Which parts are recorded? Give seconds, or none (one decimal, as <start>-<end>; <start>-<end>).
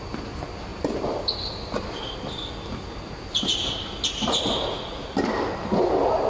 0.0-6.3